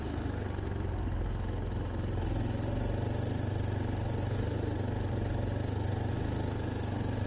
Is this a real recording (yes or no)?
yes